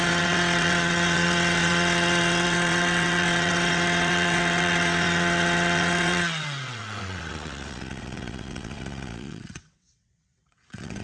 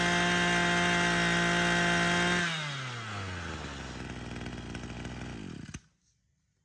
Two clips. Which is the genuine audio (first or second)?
second